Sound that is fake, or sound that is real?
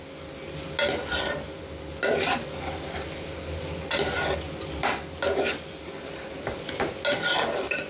real